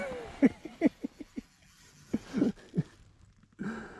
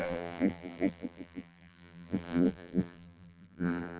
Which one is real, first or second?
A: first